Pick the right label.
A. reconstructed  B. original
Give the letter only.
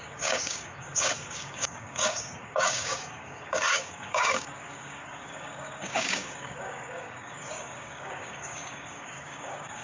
A